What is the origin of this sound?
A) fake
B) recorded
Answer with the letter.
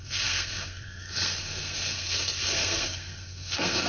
A